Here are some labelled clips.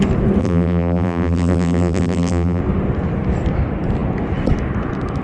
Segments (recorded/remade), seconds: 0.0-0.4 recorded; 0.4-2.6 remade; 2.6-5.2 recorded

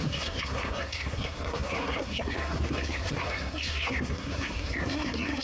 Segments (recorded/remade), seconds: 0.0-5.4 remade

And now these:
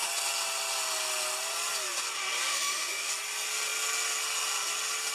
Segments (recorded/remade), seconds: 0.0-2.5 recorded; 2.5-3.1 remade; 3.1-5.1 recorded

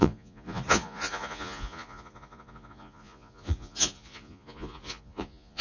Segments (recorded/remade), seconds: 0.0-5.6 remade

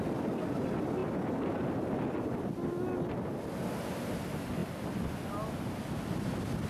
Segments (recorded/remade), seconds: 0.0-6.7 recorded

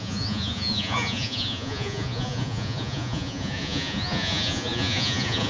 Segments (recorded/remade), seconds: 0.0-5.5 remade